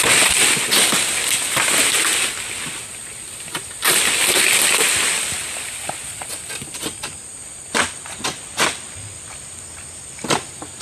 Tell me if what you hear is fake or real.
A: real